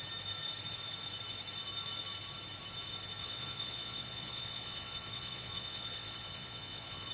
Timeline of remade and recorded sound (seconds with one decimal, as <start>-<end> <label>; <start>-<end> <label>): 0.0-3.2 recorded; 3.2-7.1 remade